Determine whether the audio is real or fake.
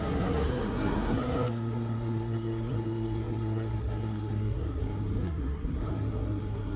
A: fake